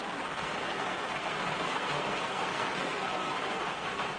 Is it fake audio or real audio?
fake